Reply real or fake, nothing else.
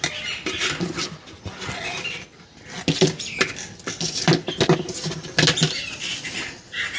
real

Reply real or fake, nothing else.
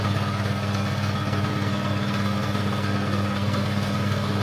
fake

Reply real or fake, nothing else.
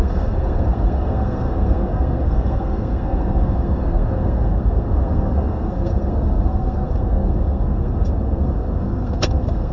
fake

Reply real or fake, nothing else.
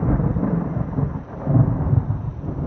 real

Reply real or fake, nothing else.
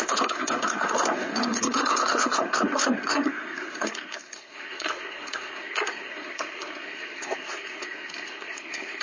fake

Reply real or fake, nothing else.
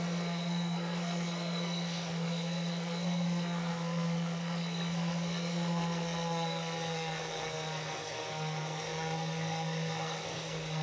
fake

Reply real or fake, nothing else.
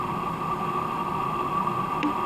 real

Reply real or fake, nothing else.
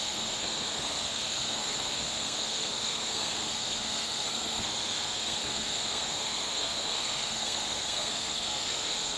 fake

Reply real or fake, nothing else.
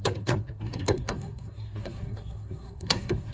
fake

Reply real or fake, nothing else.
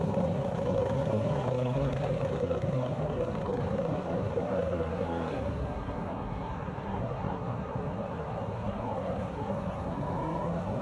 fake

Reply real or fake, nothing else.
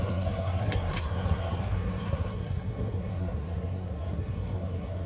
fake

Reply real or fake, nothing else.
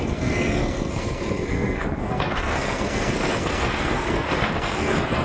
fake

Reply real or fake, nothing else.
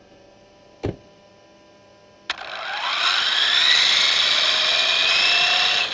real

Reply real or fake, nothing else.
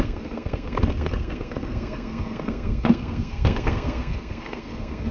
fake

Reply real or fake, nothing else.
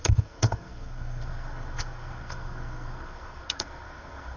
fake